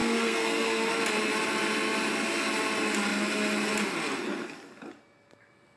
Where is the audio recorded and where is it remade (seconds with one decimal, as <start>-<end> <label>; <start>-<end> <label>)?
0.0-0.9 remade; 0.9-5.8 recorded